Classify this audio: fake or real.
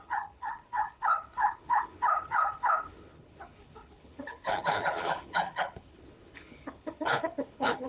fake